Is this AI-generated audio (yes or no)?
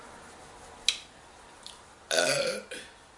no